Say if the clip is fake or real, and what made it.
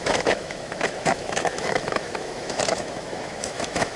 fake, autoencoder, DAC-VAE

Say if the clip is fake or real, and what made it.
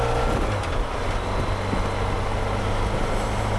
real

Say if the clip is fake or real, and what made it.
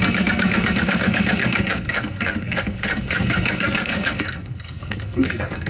fake, codec, SNAC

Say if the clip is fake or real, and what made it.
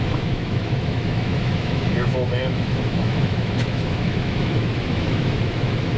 fake, autoencoder, DAC-VAE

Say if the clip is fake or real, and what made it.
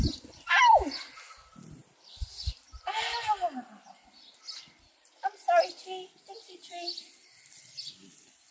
real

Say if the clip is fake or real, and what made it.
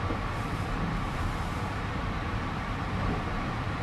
fake, vocoder, BigVGAN v2